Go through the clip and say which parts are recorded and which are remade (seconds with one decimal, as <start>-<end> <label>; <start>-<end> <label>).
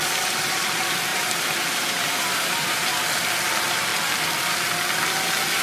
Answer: 0.0-1.1 recorded; 1.1-3.0 remade; 3.0-5.6 recorded